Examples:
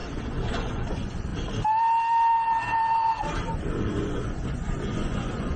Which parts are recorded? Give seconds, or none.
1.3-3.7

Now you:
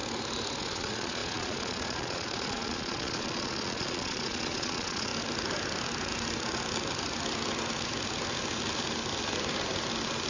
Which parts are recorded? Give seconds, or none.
0.0-0.6; 5.1-10.3

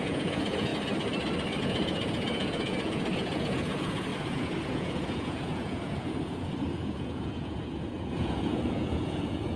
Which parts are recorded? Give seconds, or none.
0.7-1.6

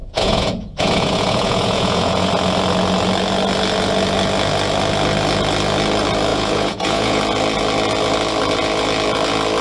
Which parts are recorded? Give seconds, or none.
2.3-6.3; 7.2-9.6

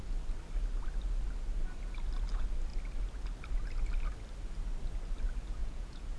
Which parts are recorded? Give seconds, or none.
0.0-5.6